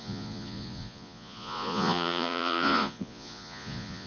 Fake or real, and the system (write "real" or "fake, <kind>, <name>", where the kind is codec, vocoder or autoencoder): fake, vocoder, Vocos